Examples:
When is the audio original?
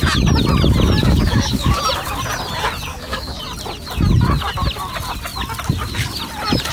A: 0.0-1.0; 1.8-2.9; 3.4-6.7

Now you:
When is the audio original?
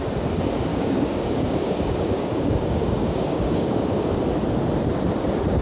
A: 0.0-0.7; 4.1-5.6